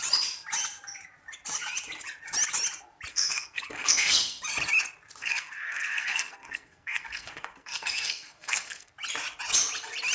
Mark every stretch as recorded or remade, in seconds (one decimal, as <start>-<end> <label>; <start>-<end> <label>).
0.0-3.1 recorded; 3.1-4.4 remade; 4.4-5.2 recorded; 5.2-8.9 remade; 8.9-10.1 recorded